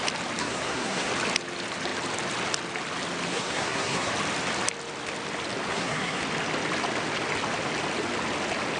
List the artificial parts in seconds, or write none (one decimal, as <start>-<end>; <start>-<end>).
0.4-1.1; 3.3-4.1; 5.7-6.2

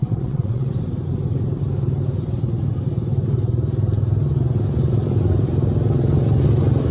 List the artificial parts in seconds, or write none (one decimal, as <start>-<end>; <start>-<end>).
0.0-0.7

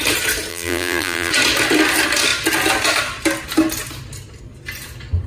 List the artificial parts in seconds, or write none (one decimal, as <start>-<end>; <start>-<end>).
0.5-1.3

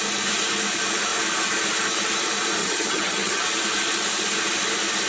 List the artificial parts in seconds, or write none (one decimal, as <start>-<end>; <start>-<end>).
2.6-3.4

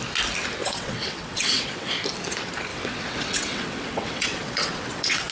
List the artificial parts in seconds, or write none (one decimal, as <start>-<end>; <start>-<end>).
0.6-1.9; 2.7-5.3

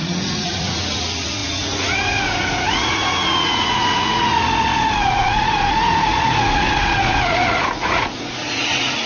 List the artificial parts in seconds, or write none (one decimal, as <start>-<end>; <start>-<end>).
0.0-9.1

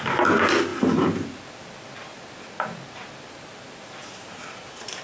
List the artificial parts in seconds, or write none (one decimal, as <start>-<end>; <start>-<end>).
none

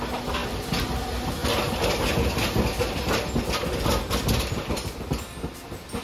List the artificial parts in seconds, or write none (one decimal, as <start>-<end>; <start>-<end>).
none